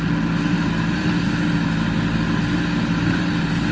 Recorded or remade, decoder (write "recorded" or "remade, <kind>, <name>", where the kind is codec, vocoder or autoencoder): recorded